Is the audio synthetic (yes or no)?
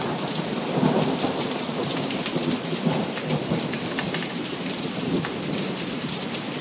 yes